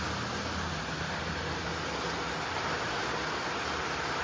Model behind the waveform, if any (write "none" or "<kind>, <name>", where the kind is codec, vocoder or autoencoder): none